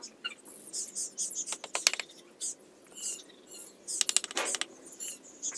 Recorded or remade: recorded